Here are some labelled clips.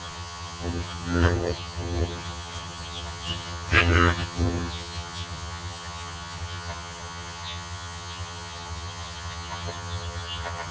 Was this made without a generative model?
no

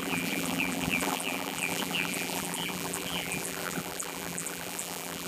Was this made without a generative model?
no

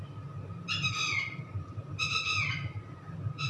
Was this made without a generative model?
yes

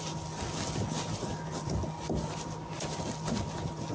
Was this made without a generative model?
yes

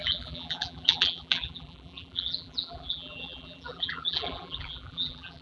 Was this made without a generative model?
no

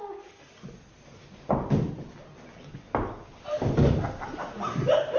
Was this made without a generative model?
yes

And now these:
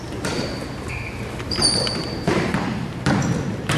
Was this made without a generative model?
no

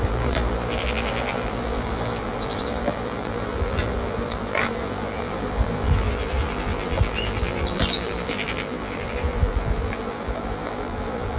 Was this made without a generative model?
no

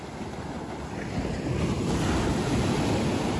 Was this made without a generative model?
yes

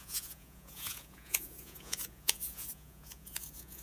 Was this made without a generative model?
no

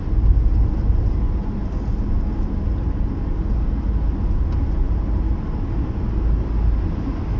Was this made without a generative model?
yes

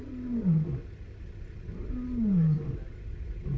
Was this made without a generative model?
yes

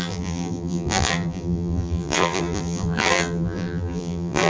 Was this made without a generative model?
no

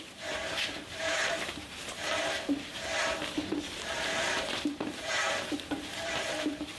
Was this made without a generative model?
no